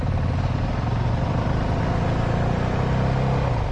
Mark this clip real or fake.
real